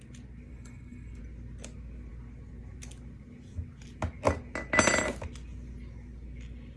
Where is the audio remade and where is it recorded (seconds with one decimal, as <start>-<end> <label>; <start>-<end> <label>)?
0.0-0.5 recorded; 0.5-1.2 remade; 1.2-6.8 recorded